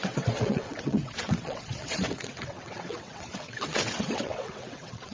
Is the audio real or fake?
fake